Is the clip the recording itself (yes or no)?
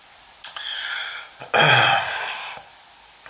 yes